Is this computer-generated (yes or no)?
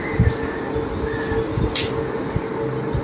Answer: no